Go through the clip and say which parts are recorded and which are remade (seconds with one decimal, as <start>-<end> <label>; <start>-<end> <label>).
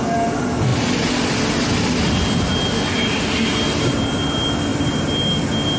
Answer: 0.0-5.8 recorded